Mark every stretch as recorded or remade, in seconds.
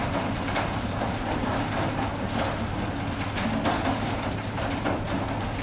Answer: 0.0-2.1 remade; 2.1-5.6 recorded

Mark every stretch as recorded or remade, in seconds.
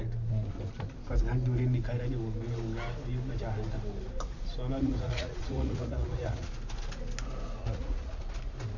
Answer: 0.0-4.8 recorded; 4.8-6.5 remade; 6.5-7.6 recorded; 7.6-8.2 remade; 8.2-8.8 recorded